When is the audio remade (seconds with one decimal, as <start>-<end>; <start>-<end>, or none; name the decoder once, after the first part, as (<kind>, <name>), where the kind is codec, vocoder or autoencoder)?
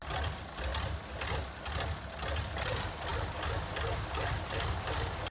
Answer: none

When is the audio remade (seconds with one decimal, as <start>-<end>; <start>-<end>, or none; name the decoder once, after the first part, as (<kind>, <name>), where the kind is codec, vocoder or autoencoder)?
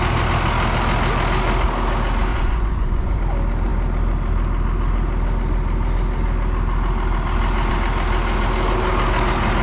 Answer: 2.3-3.2 (vocoder, Vocos)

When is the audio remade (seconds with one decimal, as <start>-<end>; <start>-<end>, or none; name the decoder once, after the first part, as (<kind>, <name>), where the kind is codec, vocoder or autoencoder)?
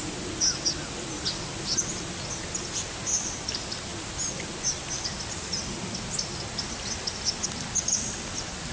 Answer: none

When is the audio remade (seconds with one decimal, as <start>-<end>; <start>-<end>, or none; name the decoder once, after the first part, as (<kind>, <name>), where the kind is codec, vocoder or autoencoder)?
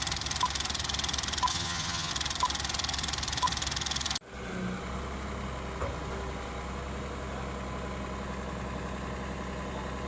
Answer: 1.5-2.1 (vocoder, HiFi-GAN)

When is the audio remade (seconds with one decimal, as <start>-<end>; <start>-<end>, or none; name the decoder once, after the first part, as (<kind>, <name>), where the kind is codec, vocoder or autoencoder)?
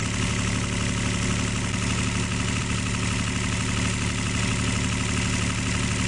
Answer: none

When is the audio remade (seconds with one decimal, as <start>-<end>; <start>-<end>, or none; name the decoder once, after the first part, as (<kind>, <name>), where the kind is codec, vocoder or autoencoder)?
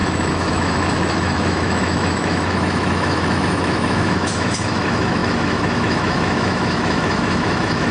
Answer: 0.0-7.9 (autoencoder, DAC-VAE)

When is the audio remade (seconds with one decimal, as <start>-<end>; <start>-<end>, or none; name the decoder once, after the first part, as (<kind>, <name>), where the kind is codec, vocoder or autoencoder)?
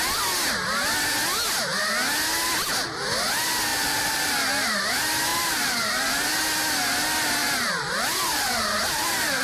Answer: 3.7-4.3 (vocoder, BigVGAN v2); 5.3-6.4; 7.4-9.4